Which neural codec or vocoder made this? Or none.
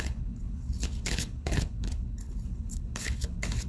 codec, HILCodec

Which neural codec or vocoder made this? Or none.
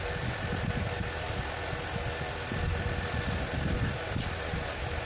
none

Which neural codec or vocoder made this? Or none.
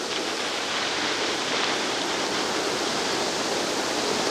none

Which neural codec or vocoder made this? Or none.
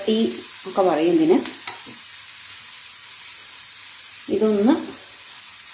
none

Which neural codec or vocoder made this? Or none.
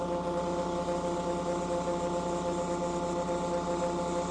none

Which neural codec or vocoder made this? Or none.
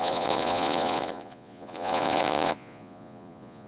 vocoder, Vocos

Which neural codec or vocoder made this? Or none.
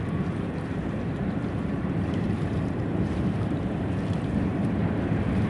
vocoder, BigVGAN v2